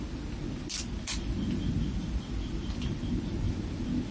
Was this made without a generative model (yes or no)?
no